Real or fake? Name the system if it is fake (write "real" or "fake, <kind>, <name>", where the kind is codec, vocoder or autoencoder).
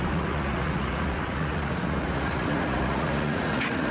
fake, vocoder, Vocos